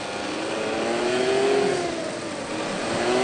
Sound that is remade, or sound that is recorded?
recorded